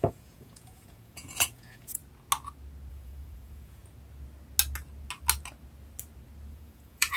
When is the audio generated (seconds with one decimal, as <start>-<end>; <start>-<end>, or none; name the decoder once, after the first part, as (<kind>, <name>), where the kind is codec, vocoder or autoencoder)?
0.0-2.0 (vocoder, Vocos); 2.9-3.8; 6.5-7.2